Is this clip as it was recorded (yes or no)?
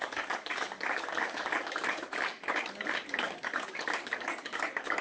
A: no